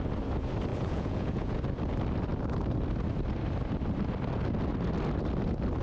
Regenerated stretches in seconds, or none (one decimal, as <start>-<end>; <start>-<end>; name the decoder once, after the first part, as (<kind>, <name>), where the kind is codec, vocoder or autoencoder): 0.7-1.6 (vocoder, Vocos)